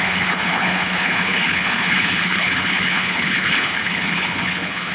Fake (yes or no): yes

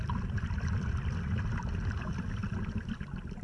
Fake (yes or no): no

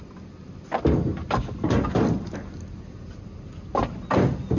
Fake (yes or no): no